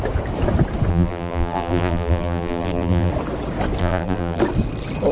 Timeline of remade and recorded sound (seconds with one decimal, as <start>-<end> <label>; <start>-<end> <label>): 0.0-0.9 recorded; 0.9-3.1 remade; 3.1-3.8 recorded; 3.8-4.4 remade; 4.4-5.1 recorded